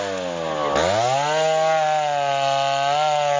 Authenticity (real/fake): real